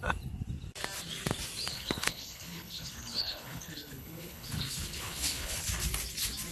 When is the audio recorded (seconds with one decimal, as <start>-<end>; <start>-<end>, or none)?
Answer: 0.0-1.7; 5.6-6.5